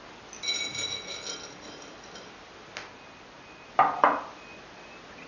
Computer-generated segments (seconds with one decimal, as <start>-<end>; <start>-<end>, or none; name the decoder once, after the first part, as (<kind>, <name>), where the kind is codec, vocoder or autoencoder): none